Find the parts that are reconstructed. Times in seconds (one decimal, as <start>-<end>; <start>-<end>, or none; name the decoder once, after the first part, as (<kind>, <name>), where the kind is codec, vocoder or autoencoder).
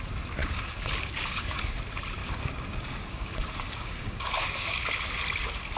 0.4-1.8 (codec, DAC); 2.2-5.1